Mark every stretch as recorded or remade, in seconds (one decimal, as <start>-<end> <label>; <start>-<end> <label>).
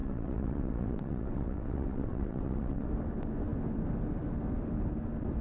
0.0-2.9 remade; 2.9-5.4 recorded